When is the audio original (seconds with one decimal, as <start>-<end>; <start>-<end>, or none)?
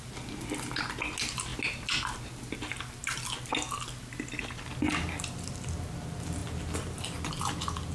0.0-7.9